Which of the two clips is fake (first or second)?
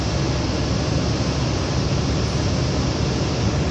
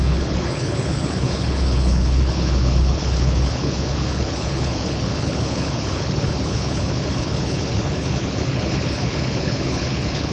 second